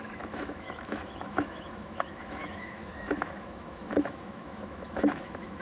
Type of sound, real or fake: fake